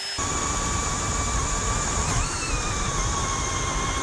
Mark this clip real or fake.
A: real